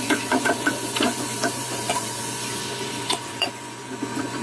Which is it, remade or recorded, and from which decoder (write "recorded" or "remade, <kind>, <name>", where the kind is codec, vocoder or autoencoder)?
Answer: remade, vocoder, Vocos